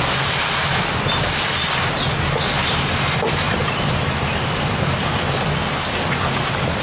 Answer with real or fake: real